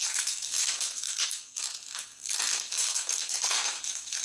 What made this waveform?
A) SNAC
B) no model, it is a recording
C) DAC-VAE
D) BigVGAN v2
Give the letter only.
A